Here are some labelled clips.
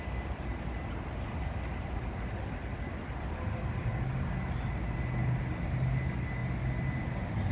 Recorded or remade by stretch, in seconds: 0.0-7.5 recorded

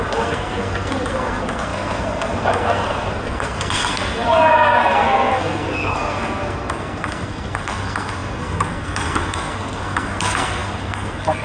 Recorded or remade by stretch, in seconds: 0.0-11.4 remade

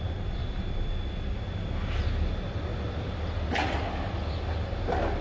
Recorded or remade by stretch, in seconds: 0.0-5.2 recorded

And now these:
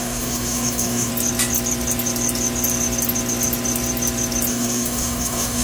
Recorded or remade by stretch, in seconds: 0.0-1.1 remade; 1.1-4.5 recorded; 4.5-5.6 remade

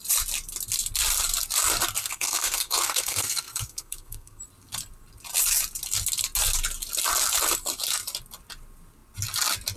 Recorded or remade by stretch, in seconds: 0.0-2.0 recorded; 2.0-4.4 remade; 4.4-9.8 recorded

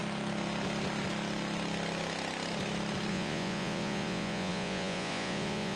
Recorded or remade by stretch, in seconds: 0.0-3.1 recorded; 3.1-5.8 remade

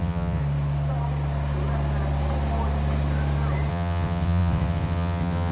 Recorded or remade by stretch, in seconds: 0.0-0.4 remade; 0.4-3.7 recorded; 3.7-5.5 remade

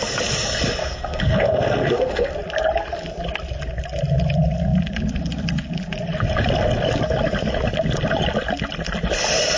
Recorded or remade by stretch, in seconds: 0.0-0.8 recorded; 0.8-2.3 remade; 2.3-9.6 recorded